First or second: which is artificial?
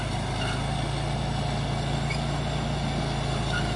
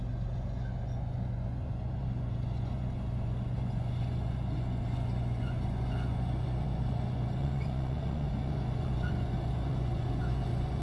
second